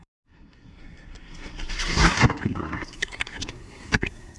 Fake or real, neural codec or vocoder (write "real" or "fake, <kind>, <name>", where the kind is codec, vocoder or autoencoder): fake, codec, SNAC